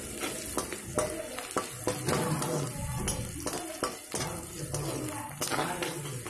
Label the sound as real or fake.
real